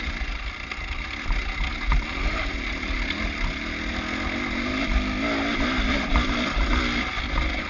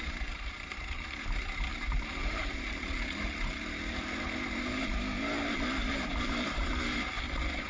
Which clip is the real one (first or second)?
first